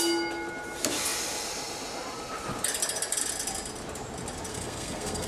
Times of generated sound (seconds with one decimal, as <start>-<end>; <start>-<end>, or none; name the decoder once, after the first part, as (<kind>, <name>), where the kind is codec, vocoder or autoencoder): 4.5-5.3 (codec, SNAC)